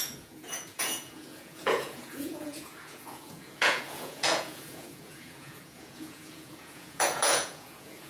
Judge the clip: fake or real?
fake